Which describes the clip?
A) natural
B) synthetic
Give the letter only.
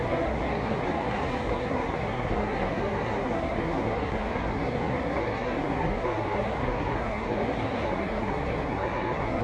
B